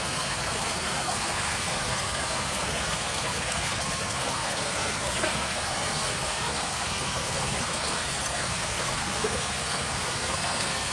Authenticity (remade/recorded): remade